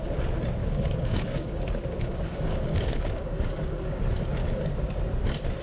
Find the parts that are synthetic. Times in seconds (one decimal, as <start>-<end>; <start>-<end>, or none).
0.6-4.0; 4.4-4.9